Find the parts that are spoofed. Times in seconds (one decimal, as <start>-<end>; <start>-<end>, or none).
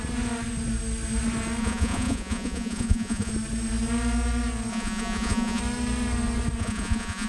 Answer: 1.6-3.3; 4.7-5.6; 6.6-7.3